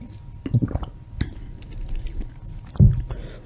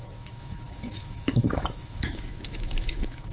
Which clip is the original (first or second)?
first